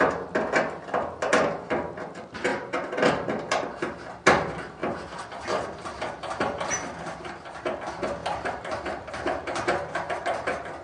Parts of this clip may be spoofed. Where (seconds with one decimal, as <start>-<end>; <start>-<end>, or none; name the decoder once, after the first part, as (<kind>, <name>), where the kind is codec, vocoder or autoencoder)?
2.5-3.8 (vocoder, BigVGAN v2); 8.2-9.1